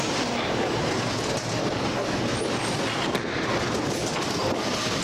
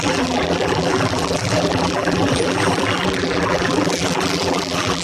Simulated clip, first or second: second